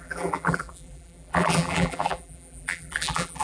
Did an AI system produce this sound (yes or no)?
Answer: yes